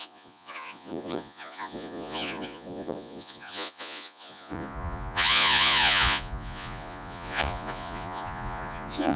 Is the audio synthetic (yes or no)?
yes